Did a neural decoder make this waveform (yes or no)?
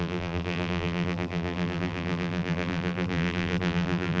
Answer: yes